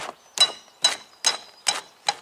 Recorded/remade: recorded